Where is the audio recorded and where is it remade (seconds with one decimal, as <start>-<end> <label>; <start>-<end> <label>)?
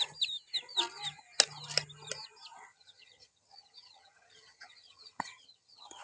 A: 0.0-2.7 recorded; 2.7-6.0 remade